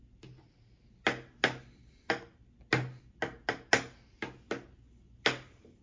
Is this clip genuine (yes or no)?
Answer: yes